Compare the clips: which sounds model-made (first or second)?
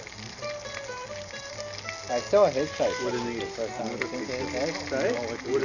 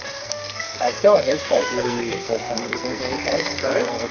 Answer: second